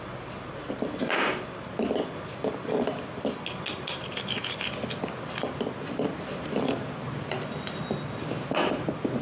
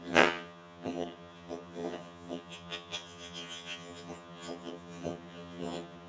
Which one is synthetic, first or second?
second